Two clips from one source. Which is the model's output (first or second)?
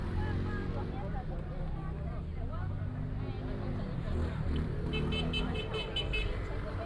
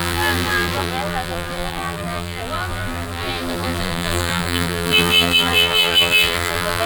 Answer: second